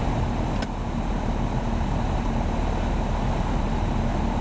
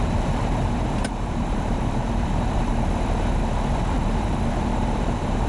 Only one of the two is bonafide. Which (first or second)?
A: first